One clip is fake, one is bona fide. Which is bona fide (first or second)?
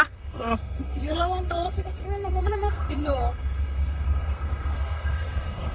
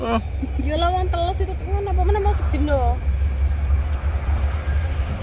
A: second